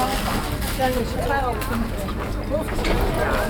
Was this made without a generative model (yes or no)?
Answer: yes